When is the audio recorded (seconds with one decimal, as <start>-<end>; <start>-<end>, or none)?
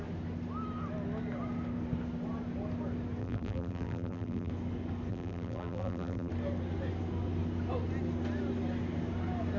0.0-3.2; 4.5-5.1; 6.3-9.6